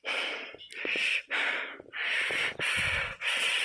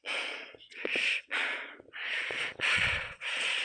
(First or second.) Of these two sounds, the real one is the first